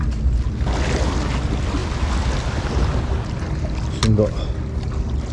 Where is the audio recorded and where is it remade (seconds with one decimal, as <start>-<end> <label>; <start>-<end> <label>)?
0.0-5.3 recorded